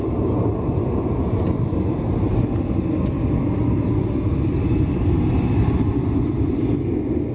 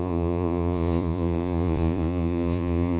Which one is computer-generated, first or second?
second